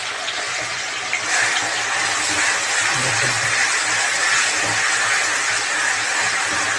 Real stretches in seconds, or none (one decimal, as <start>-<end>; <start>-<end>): 1.0-6.8